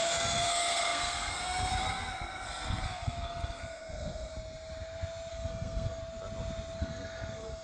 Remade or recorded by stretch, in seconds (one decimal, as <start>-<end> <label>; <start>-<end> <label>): 0.0-4.3 remade; 4.3-5.3 recorded; 5.3-6.0 remade; 6.0-6.8 recorded; 6.8-7.6 remade